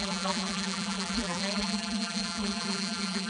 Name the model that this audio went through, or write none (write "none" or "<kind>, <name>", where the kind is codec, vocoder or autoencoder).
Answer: vocoder, BigVGAN v2